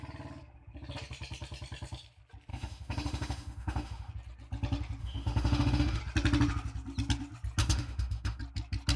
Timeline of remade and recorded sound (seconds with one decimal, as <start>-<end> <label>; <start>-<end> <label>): 0.0-2.5 recorded; 2.5-4.1 remade; 4.1-5.0 recorded; 5.0-6.0 remade; 6.0-7.6 recorded; 7.6-8.4 remade; 8.4-9.0 recorded